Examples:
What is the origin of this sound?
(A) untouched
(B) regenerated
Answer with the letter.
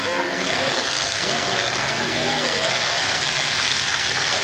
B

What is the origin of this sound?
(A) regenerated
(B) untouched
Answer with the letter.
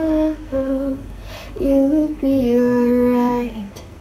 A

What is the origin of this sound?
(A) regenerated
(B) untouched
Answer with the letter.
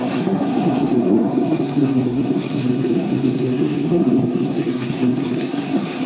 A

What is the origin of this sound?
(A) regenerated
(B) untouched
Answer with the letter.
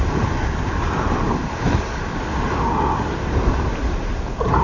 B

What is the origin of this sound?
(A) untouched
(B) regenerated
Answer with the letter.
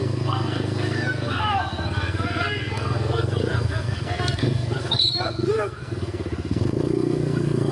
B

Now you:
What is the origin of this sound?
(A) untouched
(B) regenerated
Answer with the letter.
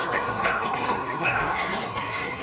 B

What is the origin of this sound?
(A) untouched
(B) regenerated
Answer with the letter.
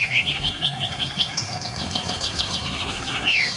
B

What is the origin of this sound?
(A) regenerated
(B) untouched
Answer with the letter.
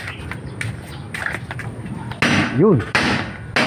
B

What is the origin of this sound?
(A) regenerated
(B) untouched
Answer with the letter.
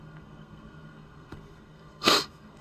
A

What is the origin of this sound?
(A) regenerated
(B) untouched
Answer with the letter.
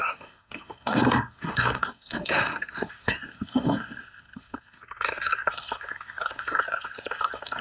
A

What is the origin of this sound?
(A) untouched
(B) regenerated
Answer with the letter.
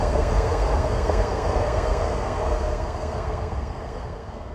B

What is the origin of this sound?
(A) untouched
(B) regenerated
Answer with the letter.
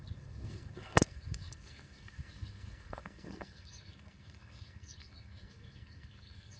B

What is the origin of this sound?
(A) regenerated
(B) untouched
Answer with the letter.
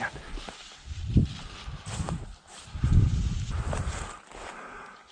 B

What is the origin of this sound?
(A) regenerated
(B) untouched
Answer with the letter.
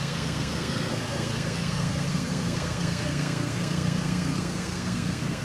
A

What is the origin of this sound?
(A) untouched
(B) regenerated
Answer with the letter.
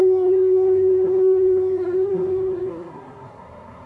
B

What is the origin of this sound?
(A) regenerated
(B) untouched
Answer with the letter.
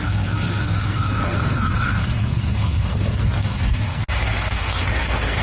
A